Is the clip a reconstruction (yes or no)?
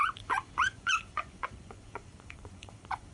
yes